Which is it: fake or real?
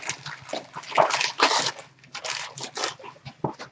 real